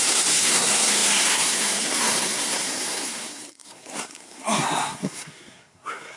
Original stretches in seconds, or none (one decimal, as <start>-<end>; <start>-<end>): none